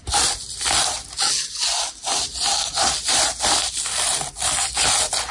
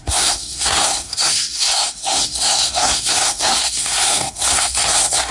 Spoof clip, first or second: second